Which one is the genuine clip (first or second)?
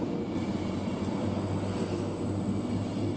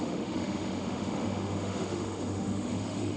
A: first